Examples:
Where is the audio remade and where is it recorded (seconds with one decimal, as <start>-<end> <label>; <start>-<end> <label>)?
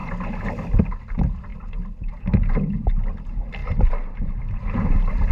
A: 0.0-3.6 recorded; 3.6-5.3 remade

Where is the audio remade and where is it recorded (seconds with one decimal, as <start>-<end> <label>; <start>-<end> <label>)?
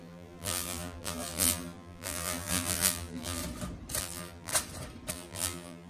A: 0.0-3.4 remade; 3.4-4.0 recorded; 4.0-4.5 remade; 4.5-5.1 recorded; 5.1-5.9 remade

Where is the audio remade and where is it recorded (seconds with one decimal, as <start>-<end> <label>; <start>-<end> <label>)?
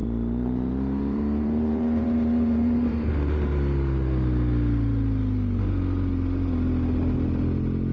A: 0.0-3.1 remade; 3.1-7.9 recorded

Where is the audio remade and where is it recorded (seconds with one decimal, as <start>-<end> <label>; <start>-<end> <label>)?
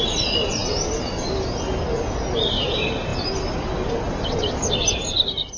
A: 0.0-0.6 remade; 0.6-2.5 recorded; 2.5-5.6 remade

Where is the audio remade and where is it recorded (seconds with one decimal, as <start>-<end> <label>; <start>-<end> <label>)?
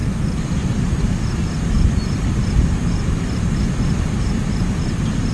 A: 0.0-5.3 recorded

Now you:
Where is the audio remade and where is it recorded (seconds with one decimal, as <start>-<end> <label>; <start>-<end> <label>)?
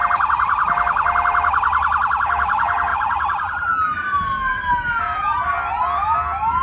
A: 0.0-2.9 recorded; 2.9-5.0 remade; 5.0-6.6 recorded